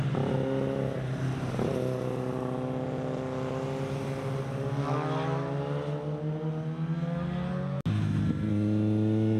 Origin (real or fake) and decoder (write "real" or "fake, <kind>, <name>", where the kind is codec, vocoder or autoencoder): real